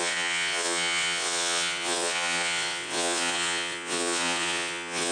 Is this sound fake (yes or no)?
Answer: yes